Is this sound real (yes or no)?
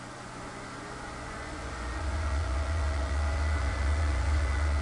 no